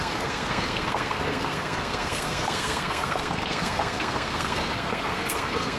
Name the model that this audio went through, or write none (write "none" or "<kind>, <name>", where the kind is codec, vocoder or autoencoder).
codec, SNAC